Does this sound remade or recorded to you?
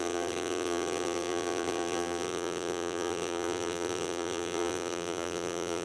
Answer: remade